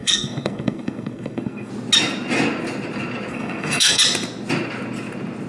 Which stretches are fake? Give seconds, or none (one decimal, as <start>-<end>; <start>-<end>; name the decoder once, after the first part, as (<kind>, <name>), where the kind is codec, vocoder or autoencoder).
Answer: 0.0-1.7 (codec, SNAC); 3.3-4.0